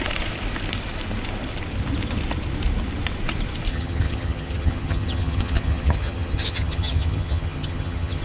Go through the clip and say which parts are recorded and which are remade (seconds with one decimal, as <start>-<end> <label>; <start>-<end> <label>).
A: 0.0-3.7 recorded; 3.7-8.2 remade